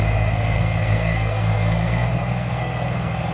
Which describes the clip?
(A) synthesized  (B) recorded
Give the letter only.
A